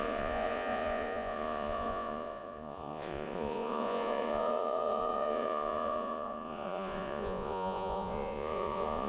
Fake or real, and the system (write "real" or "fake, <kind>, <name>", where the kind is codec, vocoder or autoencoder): fake, vocoder, Vocos